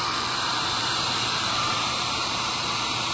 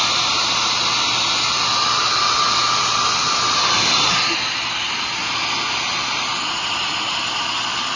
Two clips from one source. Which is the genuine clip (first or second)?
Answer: second